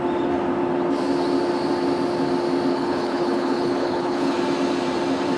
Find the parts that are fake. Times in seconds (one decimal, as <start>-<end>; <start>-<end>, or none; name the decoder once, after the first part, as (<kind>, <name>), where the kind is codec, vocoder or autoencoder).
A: 2.7-4.4 (codec, HILCodec)